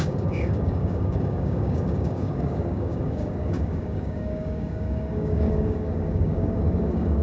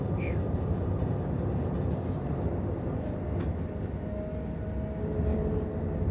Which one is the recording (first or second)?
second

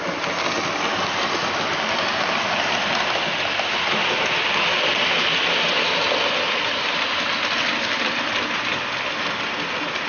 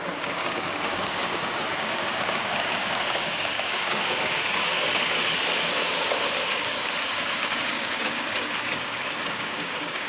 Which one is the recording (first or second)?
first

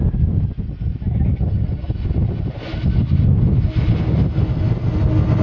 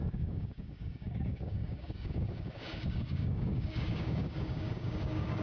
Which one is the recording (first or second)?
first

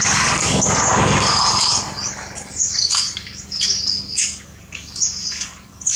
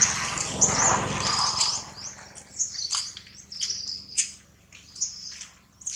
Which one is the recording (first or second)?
second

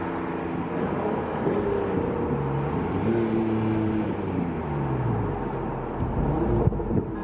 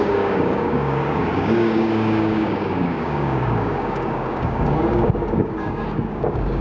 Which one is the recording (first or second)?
first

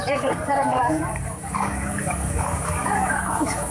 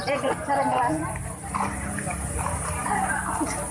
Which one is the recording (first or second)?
second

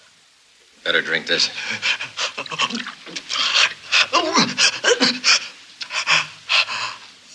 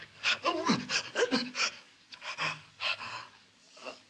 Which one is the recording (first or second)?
first